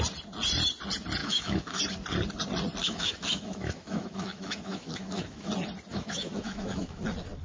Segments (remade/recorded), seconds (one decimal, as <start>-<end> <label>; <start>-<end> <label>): 0.0-1.2 recorded; 1.2-1.8 remade; 1.8-2.8 recorded; 2.8-5.5 remade; 5.5-5.9 recorded; 5.9-7.0 remade; 7.0-7.4 recorded